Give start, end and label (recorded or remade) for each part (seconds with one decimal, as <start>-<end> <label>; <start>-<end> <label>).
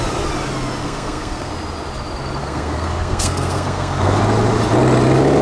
0.0-0.8 recorded; 0.8-1.5 remade; 1.5-2.4 recorded; 2.4-4.2 remade; 4.2-5.4 recorded